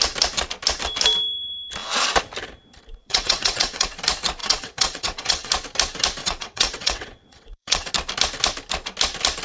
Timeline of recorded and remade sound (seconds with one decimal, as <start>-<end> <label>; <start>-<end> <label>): 0.0-3.0 recorded; 3.0-3.9 remade; 3.9-4.4 recorded; 4.4-5.5 remade; 5.5-6.2 recorded; 6.2-7.9 remade; 7.9-9.4 recorded